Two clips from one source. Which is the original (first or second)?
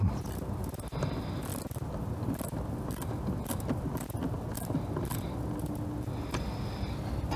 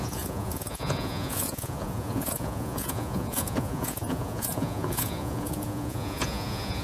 first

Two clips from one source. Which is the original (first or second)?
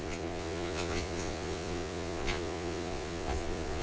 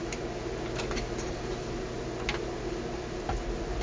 second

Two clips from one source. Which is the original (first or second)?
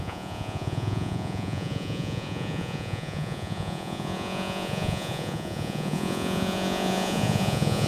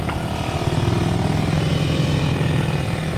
second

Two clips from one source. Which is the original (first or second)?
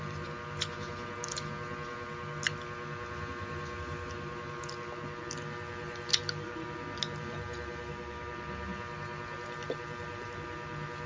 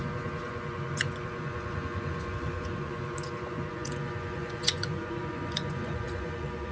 first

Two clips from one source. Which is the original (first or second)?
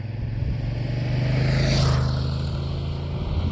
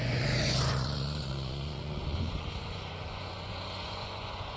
first